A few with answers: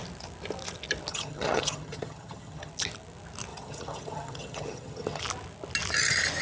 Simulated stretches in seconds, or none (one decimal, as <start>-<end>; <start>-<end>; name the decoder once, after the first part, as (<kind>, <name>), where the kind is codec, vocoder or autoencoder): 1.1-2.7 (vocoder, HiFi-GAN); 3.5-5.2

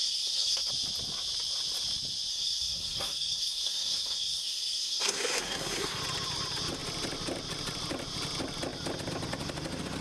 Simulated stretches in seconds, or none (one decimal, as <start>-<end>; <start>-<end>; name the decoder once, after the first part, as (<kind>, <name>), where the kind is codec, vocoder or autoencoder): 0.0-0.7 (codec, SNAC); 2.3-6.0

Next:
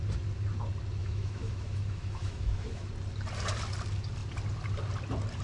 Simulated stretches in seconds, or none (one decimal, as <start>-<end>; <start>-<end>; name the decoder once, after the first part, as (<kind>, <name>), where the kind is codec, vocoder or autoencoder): 1.0-2.9 (autoencoder, DAC-VAE)

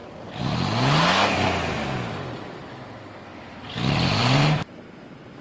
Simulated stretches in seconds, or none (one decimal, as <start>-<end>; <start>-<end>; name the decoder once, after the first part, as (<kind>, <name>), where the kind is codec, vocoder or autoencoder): 3.3-4.9 (vocoder, BigVGAN v2)

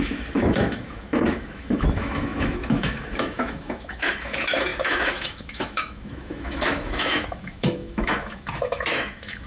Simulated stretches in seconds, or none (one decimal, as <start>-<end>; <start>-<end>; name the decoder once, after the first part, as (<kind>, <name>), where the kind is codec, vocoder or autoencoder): 0.0-9.5 (autoencoder, DAC-VAE)